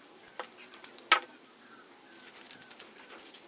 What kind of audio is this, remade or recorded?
recorded